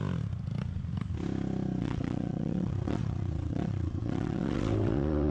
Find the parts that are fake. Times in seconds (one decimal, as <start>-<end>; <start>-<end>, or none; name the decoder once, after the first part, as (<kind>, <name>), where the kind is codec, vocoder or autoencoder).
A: 1.8-5.3 (vocoder, WaveNeXt)